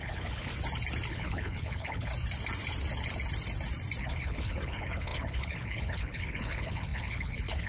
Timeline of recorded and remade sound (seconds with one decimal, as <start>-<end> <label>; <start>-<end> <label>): 0.0-0.5 remade; 0.5-1.1 recorded; 1.1-2.1 remade; 2.1-4.0 recorded; 4.0-7.7 remade